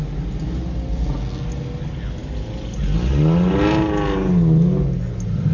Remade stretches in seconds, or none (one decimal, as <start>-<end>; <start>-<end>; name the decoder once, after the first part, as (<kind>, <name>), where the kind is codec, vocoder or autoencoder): none